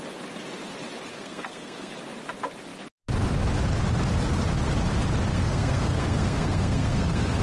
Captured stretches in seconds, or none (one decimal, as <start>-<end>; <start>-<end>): 0.0-1.1; 1.9-5.3